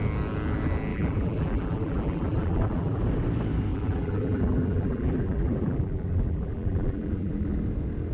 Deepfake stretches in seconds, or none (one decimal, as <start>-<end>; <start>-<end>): 0.9-3.0; 3.7-7.6